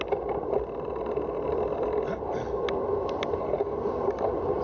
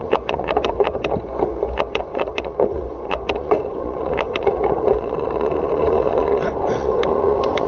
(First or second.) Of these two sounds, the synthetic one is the second